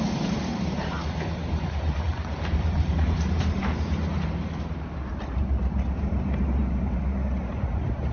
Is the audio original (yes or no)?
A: no